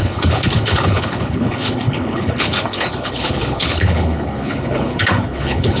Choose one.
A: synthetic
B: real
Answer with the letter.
A